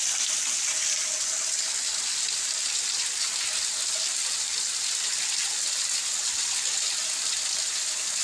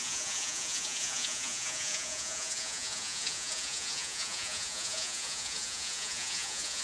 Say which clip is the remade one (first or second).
second